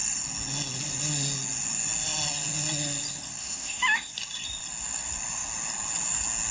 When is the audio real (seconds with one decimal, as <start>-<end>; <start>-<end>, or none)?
0.0-3.4; 4.1-6.5